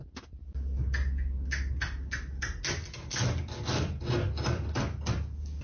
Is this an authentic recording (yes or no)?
yes